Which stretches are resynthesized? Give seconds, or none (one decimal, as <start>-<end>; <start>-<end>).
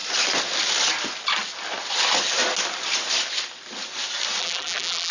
4.4-5.1